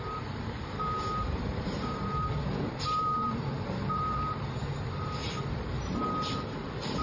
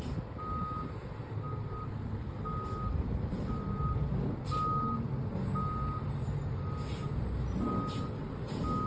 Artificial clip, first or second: first